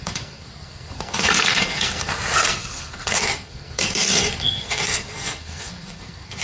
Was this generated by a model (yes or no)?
yes